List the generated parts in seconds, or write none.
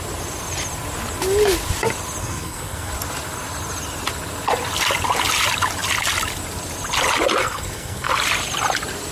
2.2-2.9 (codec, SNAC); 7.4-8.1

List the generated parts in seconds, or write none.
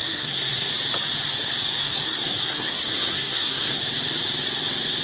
0.0-0.7 (codec, SNAC); 1.8-3.8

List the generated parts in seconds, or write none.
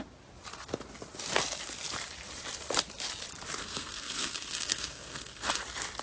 3.6-5.6 (codec, SNAC)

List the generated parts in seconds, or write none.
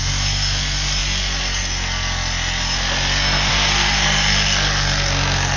3.5-5.6 (codec, SNAC)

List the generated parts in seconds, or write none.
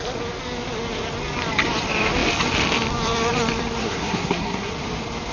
3.8-4.7 (codec, SNAC)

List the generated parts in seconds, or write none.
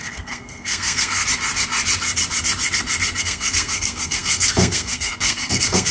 0.0-1.2 (codec, SNAC); 3.2-5.9